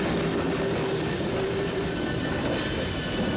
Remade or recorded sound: recorded